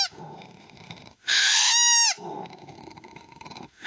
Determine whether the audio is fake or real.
fake